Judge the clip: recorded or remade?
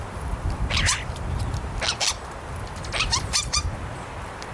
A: remade